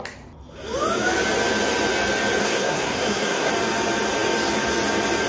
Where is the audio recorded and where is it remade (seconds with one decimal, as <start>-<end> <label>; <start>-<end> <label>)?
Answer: 0.0-2.4 recorded; 2.4-3.5 remade; 3.5-5.3 recorded